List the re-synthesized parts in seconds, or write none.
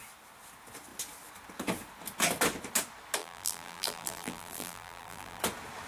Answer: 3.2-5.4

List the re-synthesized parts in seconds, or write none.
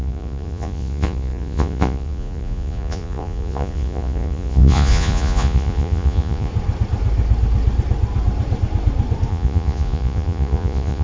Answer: 0.0-6.5; 9.3-11.0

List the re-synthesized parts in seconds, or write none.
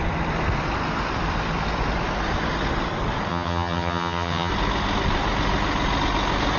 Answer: 3.3-4.5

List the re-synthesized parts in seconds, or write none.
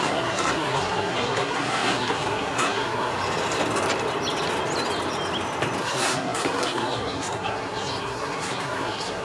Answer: 0.0-3.1; 5.8-9.2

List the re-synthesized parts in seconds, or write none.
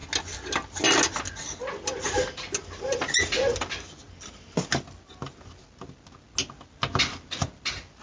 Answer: none